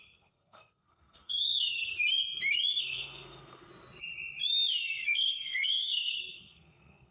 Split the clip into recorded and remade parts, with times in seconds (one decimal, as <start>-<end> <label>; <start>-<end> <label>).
0.0-1.9 remade; 1.9-2.8 recorded; 2.8-3.7 remade; 3.7-5.0 recorded; 5.0-7.1 remade

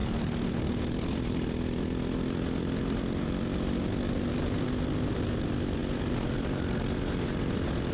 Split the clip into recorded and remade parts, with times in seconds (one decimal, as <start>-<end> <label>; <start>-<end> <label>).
0.0-7.9 recorded

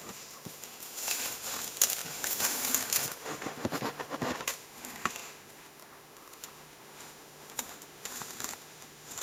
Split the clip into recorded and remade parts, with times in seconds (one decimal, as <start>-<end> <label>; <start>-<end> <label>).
0.0-9.2 remade

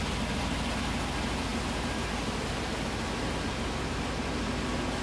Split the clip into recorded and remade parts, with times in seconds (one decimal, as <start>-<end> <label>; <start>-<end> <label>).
0.0-5.0 recorded

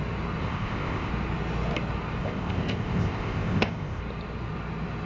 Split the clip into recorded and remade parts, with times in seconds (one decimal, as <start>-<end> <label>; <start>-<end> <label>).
0.0-0.4 recorded; 0.4-1.1 remade; 1.1-2.2 recorded; 2.2-4.0 remade; 4.0-5.1 recorded

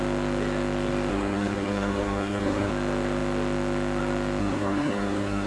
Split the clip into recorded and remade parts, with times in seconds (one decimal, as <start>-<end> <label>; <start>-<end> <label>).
0.0-1.1 recorded; 1.1-2.7 remade; 2.7-4.4 recorded; 4.4-5.5 remade

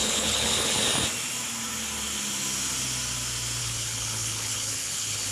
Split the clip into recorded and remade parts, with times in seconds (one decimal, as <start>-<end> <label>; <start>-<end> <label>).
0.0-0.8 remade; 0.8-3.6 recorded; 3.6-5.3 remade

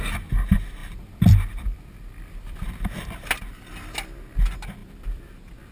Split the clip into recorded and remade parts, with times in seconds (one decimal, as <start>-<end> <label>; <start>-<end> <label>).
0.0-0.8 recorded; 0.8-3.7 remade; 3.7-4.8 recorded; 4.8-5.3 remade; 5.3-5.7 recorded